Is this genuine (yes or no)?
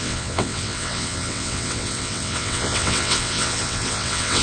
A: no